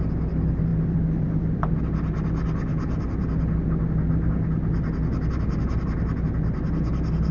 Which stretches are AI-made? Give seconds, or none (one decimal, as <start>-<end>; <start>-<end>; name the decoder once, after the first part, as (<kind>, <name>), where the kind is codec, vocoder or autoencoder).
0.7-1.8 (vocoder, BigVGAN v2)